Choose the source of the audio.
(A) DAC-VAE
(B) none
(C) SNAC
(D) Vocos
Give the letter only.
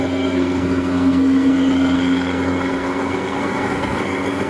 C